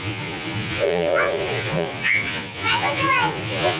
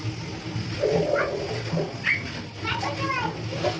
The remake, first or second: first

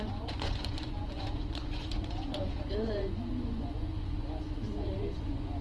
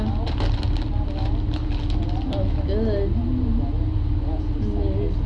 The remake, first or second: first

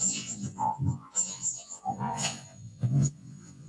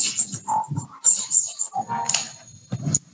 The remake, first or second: first